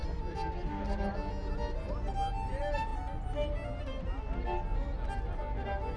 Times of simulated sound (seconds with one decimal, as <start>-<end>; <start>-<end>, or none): none